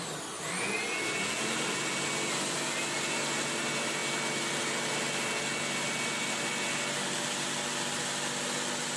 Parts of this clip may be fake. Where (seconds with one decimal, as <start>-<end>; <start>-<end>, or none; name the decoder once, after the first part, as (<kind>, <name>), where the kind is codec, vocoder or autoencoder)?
none